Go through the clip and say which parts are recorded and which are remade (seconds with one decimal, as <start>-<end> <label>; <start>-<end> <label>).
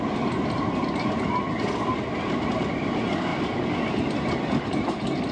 0.0-5.3 recorded